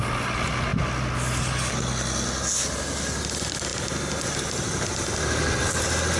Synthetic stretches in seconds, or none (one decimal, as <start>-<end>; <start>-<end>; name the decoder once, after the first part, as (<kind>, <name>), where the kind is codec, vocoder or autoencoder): none

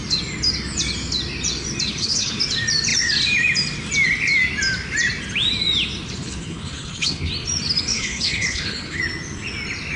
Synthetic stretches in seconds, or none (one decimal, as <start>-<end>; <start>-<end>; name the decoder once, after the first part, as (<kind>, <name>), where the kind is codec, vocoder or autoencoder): 1.9-2.4 (codec, HILCodec); 6.2-7.3; 7.9-9.0

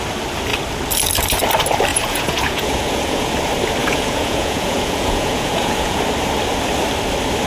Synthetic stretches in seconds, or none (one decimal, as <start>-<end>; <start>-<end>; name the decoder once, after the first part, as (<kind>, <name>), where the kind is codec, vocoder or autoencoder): 1.9-3.3 (vocoder, Vocos); 3.8-6.0

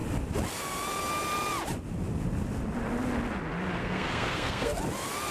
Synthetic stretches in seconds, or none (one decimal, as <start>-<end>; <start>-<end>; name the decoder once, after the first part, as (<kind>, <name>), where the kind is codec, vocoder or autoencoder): 3.8-4.8 (codec, SNAC)

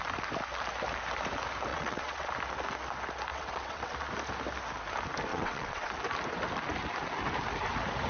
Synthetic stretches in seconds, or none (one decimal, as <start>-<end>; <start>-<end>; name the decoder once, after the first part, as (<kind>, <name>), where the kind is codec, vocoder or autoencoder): 1.7-2.3 (vocoder, WaveNeXt); 3.3-4.0; 5.3-5.9

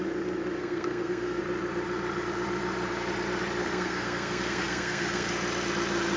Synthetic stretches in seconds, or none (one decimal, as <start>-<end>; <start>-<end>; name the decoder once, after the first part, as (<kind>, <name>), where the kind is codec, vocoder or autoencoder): 0.6-1.4 (codec, SNAC); 3.6-5.3